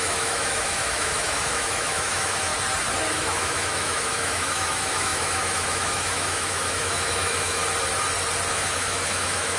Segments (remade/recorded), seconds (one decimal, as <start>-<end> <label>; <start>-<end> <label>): 0.0-2.5 remade; 2.5-3.1 recorded; 3.1-7.6 remade; 7.6-8.5 recorded; 8.5-9.6 remade